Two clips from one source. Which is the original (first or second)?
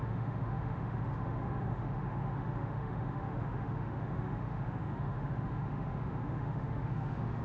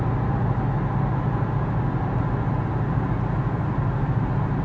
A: second